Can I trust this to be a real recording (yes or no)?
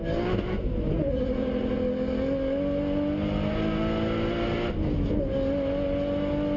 yes